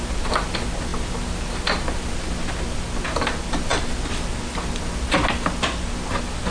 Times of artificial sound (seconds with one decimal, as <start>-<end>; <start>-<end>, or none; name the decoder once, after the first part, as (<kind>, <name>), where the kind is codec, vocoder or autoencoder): none